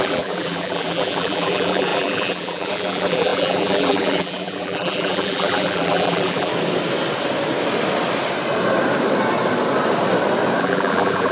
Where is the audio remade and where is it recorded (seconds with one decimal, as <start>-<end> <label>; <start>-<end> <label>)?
0.0-6.5 remade; 6.5-10.6 recorded; 10.6-11.3 remade